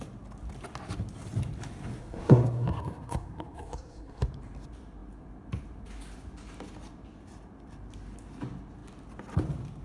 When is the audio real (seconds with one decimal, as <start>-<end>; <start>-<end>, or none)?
0.0-2.0; 4.2-9.8